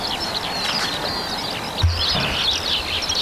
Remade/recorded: recorded